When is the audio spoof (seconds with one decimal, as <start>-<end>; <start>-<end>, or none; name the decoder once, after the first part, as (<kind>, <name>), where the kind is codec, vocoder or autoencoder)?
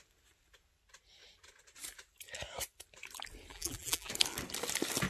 3.5-4.1 (vocoder, BigVGAN v2)